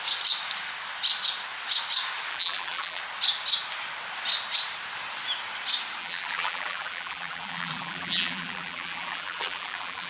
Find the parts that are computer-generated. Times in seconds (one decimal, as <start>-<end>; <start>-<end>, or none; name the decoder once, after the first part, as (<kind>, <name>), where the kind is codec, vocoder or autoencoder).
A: 2.3-3.0 (vocoder, BigVGAN v2); 6.0-10.1